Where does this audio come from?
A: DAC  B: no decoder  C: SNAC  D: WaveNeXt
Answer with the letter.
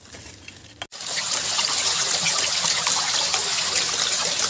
B